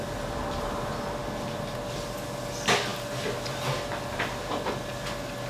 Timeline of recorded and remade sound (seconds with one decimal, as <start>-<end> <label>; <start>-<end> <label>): 0.0-5.5 recorded